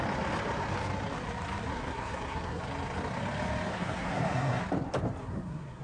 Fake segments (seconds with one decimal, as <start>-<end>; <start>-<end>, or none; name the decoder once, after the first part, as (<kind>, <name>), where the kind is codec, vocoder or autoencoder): 1.7-2.6 (codec, SNAC); 3.7-4.6; 5.2-5.8